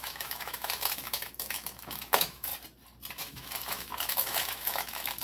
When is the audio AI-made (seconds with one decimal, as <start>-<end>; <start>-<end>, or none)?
0.0-2.5; 3.1-5.2